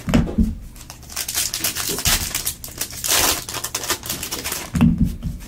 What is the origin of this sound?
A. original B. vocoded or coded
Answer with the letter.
A